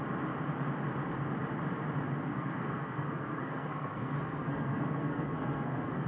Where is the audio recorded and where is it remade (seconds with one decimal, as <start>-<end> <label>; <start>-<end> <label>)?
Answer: 0.0-2.3 recorded; 2.3-6.1 remade